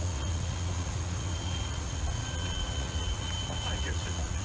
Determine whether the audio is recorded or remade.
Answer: remade